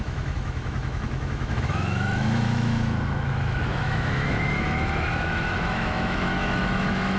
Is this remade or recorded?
remade